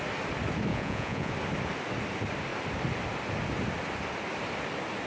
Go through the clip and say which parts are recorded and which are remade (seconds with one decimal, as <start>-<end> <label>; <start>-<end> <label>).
0.0-0.7 recorded; 0.7-1.3 remade; 1.3-5.1 recorded